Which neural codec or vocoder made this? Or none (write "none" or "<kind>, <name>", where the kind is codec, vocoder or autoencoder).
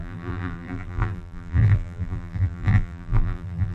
vocoder, BigVGAN v2